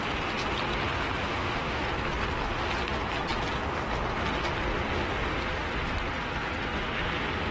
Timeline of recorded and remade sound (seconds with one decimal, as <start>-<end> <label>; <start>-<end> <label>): 0.0-1.2 recorded; 1.2-1.8 remade; 1.8-7.5 recorded